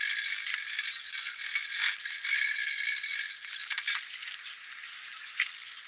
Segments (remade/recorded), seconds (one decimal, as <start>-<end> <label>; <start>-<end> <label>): 0.0-5.9 recorded